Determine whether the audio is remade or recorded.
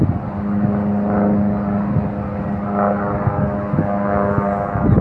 recorded